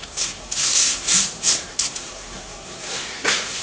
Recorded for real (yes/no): no